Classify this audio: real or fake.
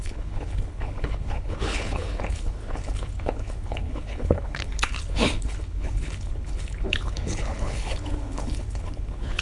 fake